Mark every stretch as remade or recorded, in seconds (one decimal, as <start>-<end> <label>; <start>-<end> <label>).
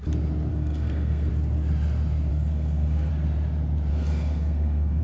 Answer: 0.0-0.5 recorded; 0.5-1.3 remade; 1.3-2.3 recorded; 2.3-3.1 remade; 3.1-3.9 recorded; 3.9-5.0 remade